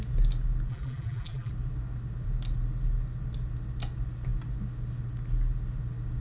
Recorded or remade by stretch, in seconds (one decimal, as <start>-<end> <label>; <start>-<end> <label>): 0.0-0.7 recorded; 0.7-1.5 remade; 1.5-6.2 recorded